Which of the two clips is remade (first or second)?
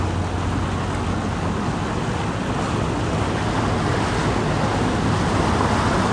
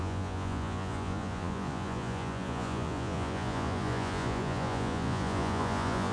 second